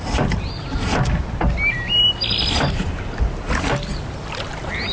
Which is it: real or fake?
real